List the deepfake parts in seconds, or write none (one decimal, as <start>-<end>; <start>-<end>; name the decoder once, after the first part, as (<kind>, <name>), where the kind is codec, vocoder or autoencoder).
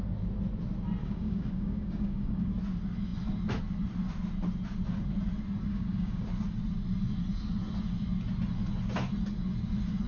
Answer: 1.0-2.5 (codec, DAC); 5.7-6.2